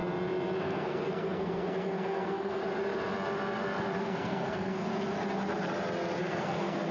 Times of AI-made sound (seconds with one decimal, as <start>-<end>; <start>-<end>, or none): 0.6-2.6; 4.0-4.9; 6.2-6.9